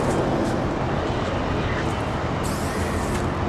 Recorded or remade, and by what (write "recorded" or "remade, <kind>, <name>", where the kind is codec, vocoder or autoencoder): recorded